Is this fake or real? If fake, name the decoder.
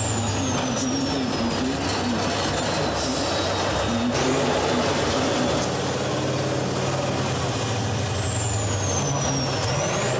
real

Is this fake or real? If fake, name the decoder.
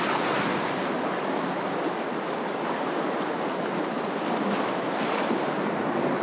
real